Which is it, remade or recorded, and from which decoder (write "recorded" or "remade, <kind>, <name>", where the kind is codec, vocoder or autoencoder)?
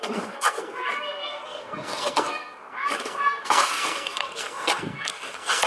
remade, codec, SNAC